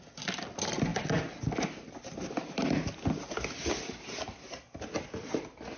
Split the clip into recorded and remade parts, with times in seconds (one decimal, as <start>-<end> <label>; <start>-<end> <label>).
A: 0.0-5.8 recorded